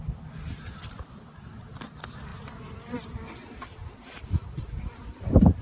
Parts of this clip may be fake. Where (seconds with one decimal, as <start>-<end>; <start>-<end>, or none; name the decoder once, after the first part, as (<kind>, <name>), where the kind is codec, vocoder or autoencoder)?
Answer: 0.8-1.5 (vocoder, BigVGAN v2); 3.8-5.6